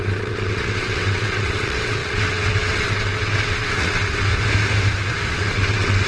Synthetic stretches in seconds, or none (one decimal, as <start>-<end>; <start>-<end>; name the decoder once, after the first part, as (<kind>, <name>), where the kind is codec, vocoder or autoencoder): 0.0-4.3 (vocoder, WaveNeXt); 5.3-6.1

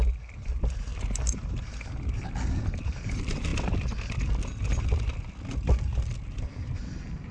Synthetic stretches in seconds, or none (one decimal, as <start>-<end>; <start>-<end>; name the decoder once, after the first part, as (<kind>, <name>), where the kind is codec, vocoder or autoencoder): none

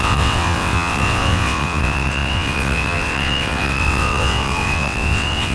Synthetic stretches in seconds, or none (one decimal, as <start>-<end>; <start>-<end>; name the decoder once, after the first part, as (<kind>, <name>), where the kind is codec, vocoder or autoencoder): 0.0-5.5 (vocoder, WaveNeXt)

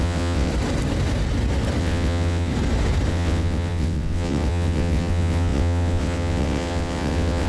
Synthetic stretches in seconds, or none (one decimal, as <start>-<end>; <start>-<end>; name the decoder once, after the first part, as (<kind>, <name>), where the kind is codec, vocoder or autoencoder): 0.0-0.5 (vocoder, WaveNeXt); 1.8-2.5; 3.1-7.5

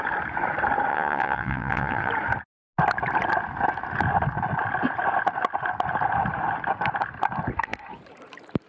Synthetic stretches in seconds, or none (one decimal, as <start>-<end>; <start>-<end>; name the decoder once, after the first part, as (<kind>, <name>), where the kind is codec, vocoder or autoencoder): 0.9-2.1 (vocoder, WaveNeXt)

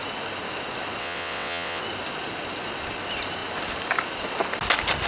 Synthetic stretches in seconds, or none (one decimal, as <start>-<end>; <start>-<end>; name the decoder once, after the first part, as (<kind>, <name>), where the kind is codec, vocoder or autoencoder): 1.0-1.8 (vocoder, WaveNeXt)

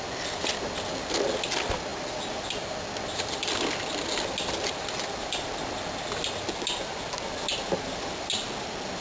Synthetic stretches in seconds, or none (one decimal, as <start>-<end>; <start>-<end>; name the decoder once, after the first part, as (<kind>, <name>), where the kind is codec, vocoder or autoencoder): none